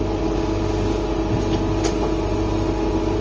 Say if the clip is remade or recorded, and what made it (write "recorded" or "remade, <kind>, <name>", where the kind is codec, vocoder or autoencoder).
recorded